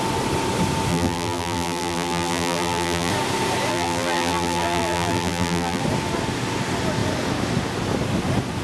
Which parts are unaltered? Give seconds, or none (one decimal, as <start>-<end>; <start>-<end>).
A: 0.0-0.9; 3.1-3.7; 5.8-8.6

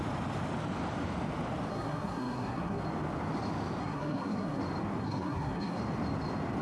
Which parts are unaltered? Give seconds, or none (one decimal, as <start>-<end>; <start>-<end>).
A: 0.0-1.7; 2.8-3.8; 4.6-5.0; 5.8-6.6

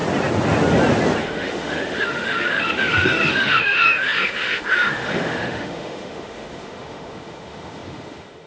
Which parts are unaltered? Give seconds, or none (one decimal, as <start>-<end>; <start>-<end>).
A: 0.0-1.2

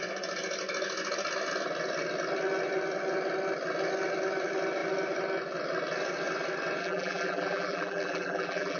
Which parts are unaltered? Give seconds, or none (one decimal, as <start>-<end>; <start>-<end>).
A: 0.0-6.8

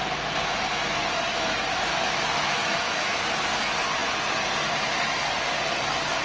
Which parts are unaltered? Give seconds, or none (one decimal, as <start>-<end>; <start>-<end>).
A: 0.0-1.9; 3.2-6.2

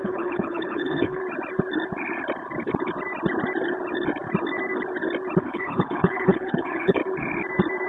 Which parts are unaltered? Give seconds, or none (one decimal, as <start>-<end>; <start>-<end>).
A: 1.2-5.4; 7.0-7.9